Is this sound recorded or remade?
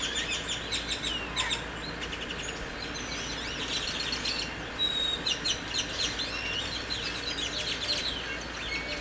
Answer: recorded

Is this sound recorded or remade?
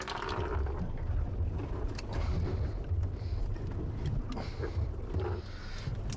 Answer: recorded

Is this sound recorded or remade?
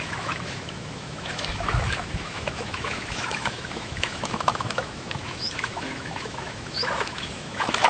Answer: remade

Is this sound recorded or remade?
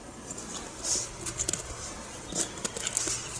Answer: recorded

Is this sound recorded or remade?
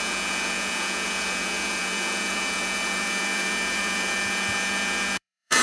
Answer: remade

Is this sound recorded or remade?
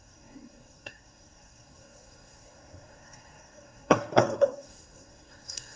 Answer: remade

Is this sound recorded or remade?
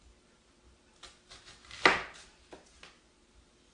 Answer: recorded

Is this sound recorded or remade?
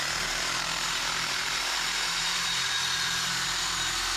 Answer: remade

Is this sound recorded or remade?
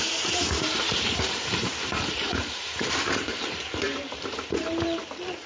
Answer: remade